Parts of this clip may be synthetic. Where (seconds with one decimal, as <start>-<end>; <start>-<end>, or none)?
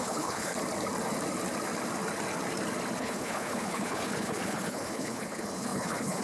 0.0-0.5; 3.0-6.2